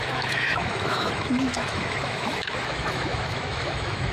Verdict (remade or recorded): remade